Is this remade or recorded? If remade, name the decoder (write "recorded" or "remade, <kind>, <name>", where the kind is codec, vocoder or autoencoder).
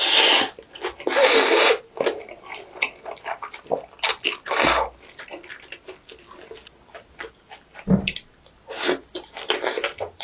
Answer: recorded